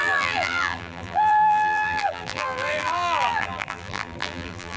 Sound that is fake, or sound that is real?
fake